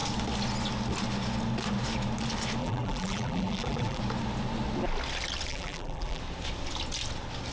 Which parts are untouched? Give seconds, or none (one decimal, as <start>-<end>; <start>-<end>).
0.0-2.6; 4.0-5.5; 6.2-7.5